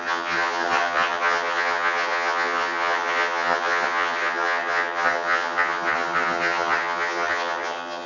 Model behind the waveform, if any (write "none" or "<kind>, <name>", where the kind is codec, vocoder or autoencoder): vocoder, HiFi-GAN